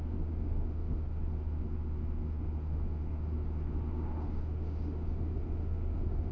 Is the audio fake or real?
fake